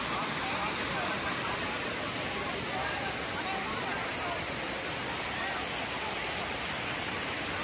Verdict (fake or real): real